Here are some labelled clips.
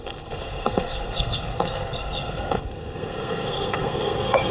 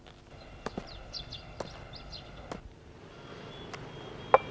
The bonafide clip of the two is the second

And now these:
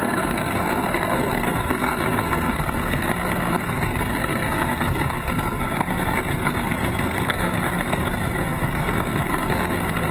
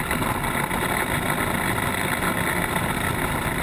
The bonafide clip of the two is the second